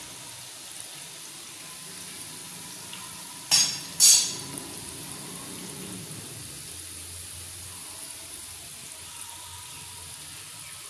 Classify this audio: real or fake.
real